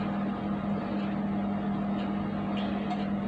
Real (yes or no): yes